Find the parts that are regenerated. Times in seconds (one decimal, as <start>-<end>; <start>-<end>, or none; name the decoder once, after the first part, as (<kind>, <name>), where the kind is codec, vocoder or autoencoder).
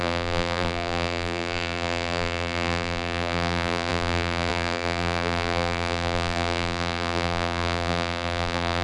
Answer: 0.0-8.8 (vocoder, BigVGAN v2)